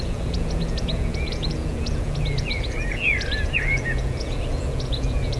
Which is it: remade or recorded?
remade